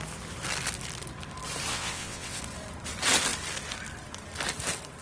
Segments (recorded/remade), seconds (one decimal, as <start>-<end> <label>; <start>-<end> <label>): 0.0-1.7 recorded; 1.7-2.4 remade; 2.4-5.0 recorded